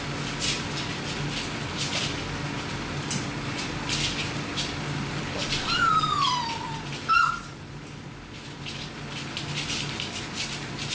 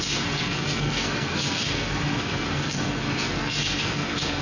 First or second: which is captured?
first